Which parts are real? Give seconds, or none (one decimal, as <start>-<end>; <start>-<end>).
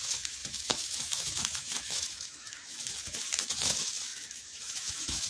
none